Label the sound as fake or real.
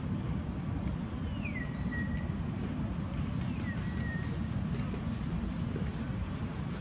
real